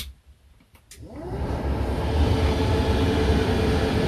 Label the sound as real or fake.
real